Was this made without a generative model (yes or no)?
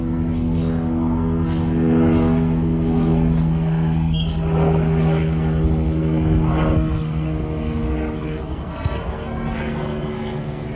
no